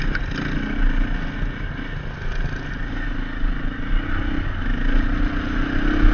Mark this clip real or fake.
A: real